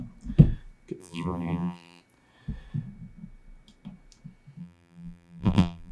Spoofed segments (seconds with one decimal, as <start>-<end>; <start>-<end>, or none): 1.0-2.0; 4.6-5.9

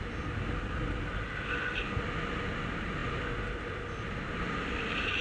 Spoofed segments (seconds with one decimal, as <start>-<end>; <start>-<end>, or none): none

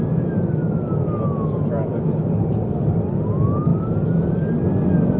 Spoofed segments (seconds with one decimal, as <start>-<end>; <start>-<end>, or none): none

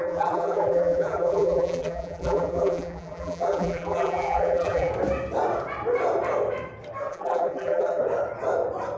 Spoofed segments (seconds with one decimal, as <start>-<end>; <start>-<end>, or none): 0.0-4.9; 7.1-8.0